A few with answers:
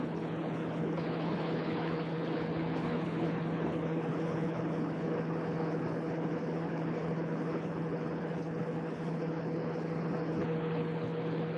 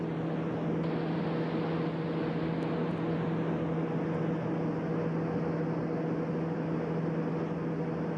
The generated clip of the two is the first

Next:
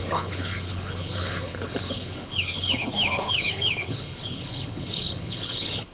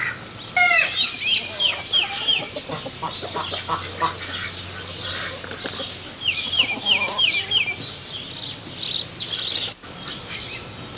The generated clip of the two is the first